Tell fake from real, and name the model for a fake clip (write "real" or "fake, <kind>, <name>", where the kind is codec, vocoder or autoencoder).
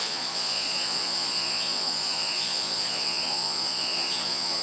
fake, vocoder, Vocos